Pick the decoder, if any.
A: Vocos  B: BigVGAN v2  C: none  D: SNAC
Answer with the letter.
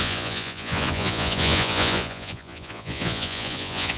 A